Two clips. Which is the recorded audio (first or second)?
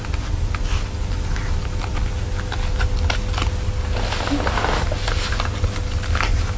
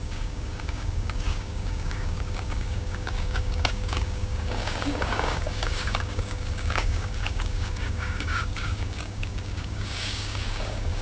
first